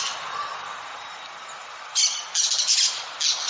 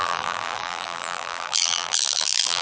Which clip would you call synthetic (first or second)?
second